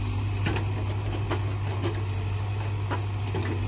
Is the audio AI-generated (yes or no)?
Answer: no